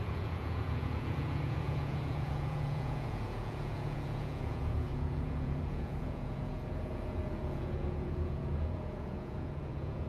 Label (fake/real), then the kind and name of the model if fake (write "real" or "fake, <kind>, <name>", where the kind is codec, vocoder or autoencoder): fake, vocoder, Vocos